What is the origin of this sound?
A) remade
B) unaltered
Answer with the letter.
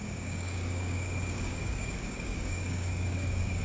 A